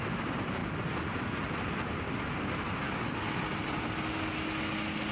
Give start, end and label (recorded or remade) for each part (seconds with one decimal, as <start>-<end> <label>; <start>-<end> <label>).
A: 0.0-5.1 recorded